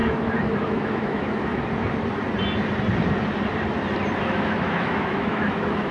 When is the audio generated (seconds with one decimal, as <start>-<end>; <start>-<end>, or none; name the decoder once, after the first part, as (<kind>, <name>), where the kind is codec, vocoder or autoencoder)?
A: 0.0-1.5 (autoencoder, DAC-VAE); 4.2-5.9